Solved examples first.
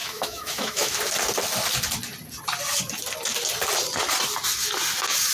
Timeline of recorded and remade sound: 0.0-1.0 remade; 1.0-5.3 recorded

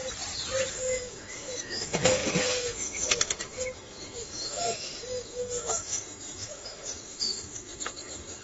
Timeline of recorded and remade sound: 0.0-0.7 recorded; 0.7-8.4 remade

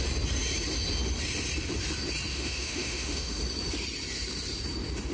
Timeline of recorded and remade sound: 0.0-2.3 recorded; 2.3-3.4 remade; 3.4-5.1 recorded

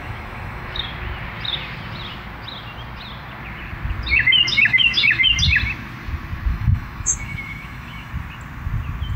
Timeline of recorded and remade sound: 0.0-0.8 remade; 0.8-4.5 recorded; 4.5-5.2 remade; 5.2-6.5 recorded; 6.5-8.1 remade; 8.1-9.2 recorded

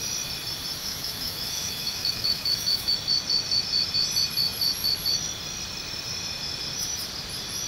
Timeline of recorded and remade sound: 0.0-0.8 recorded; 0.8-2.9 remade; 2.9-7.7 recorded

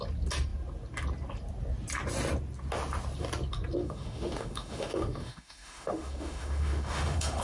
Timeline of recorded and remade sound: 0.0-3.8 recorded; 3.8-7.4 remade

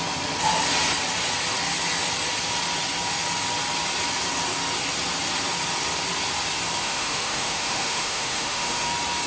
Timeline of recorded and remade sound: 0.0-6.8 recorded; 6.8-8.9 remade; 8.9-9.3 recorded

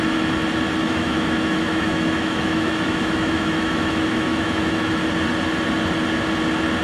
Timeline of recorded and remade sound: 0.0-0.8 recorded; 0.8-4.9 remade; 4.9-6.8 recorded